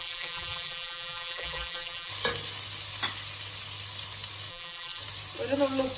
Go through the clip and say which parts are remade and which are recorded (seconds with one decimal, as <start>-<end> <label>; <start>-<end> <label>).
0.0-2.1 remade; 2.1-4.5 recorded; 4.5-5.0 remade; 5.0-6.0 recorded